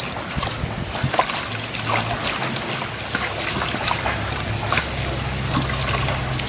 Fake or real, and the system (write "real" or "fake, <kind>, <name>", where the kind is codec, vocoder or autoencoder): real